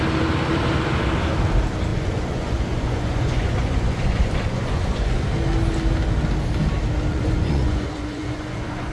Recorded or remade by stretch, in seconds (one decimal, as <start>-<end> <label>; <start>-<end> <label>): 0.0-1.9 recorded; 1.9-5.2 remade; 5.2-7.1 recorded; 7.1-8.9 remade